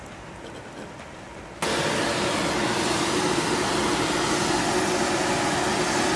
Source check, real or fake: real